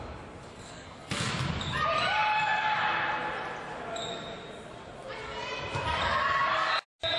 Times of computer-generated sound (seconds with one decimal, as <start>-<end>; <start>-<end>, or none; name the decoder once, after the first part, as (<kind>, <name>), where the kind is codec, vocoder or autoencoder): 0.5-1.3 (codec, SNAC)